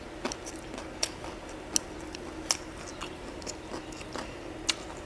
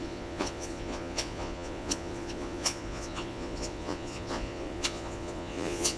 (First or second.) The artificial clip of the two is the second